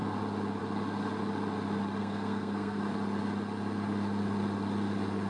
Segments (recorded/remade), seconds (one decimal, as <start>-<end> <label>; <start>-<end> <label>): 0.0-2.0 recorded; 2.0-2.8 remade; 2.8-5.3 recorded